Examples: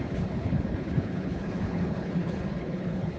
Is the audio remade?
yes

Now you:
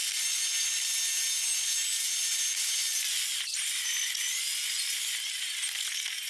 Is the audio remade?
no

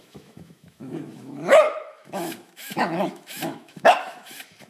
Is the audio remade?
yes